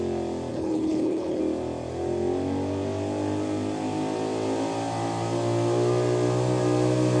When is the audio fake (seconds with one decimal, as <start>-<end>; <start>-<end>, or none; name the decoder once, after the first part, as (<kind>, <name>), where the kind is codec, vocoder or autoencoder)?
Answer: 0.5-1.4 (codec, HILCodec)